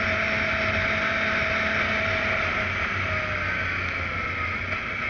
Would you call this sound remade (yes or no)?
no